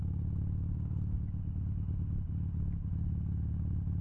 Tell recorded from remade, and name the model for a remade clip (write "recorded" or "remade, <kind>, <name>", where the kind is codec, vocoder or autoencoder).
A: recorded